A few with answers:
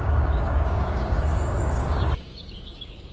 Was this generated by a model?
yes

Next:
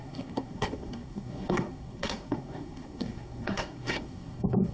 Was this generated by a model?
yes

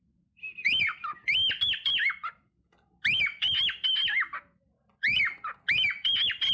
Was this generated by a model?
no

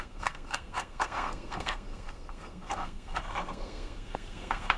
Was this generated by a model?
yes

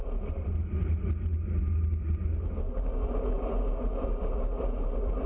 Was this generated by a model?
no